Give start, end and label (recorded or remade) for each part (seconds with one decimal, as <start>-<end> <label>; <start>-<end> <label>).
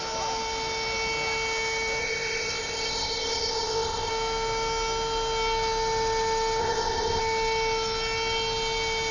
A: 0.0-2.0 recorded; 2.0-4.1 remade; 4.1-6.6 recorded; 6.6-7.2 remade; 7.2-9.1 recorded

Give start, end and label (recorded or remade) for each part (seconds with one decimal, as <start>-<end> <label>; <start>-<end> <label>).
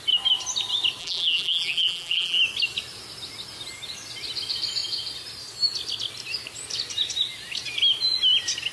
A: 0.0-1.0 recorded; 1.0-2.4 remade; 2.4-8.7 recorded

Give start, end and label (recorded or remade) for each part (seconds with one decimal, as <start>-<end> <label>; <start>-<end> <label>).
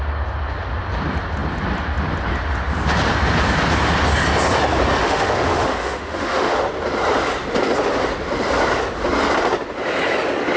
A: 0.0-5.0 recorded; 5.0-6.6 remade; 6.6-10.6 recorded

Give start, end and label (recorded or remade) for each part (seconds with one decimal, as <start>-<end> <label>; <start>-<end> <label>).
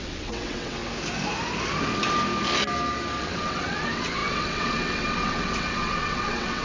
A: 0.0-0.8 remade; 0.8-3.2 recorded; 3.2-6.6 remade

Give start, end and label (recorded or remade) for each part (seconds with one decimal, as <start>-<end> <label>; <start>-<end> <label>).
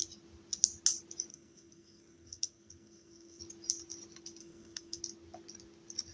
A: 0.0-1.3 recorded; 1.3-3.4 remade; 3.4-4.4 recorded; 4.4-5.0 remade; 5.0-6.1 recorded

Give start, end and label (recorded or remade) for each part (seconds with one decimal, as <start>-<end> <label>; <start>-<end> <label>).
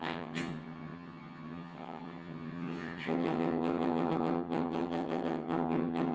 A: 0.0-6.1 remade